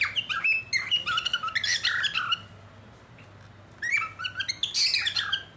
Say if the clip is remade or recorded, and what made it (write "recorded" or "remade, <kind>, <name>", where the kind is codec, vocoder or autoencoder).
recorded